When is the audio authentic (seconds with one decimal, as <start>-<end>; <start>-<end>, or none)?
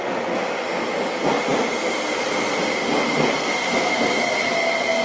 0.0-5.0